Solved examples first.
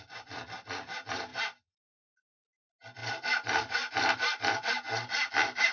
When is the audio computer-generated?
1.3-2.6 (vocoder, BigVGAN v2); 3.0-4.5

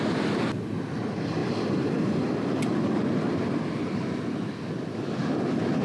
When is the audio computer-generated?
none